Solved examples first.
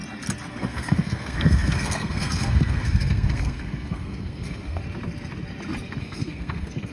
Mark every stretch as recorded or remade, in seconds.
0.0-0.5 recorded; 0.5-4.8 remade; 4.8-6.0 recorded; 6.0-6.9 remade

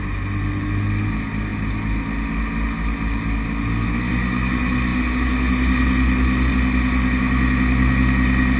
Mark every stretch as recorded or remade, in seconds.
0.0-8.6 recorded

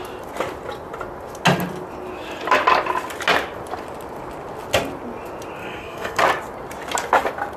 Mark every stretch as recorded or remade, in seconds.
0.0-5.6 recorded; 5.6-6.2 remade; 6.2-7.6 recorded

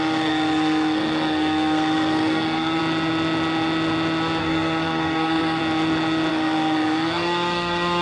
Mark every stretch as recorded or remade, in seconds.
0.0-2.8 remade; 2.8-4.4 recorded; 4.4-5.6 remade; 5.6-6.3 recorded; 6.3-8.0 remade